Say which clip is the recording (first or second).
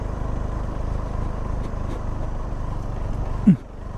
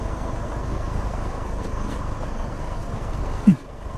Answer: first